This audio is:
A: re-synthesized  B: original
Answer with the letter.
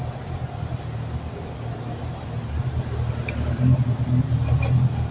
B